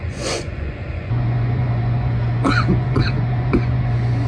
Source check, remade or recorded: remade